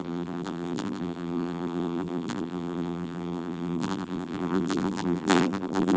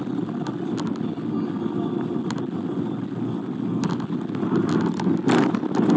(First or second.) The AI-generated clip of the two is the first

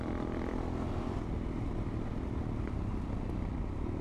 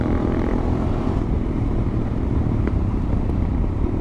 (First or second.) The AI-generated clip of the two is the second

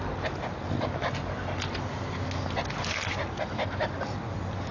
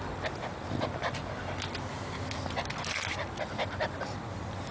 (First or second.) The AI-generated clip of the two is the second